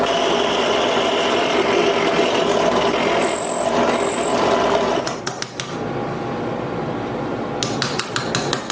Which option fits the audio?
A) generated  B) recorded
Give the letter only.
B